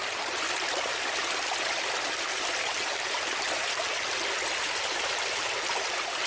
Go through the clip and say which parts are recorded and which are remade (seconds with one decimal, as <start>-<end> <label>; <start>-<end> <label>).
0.0-6.3 recorded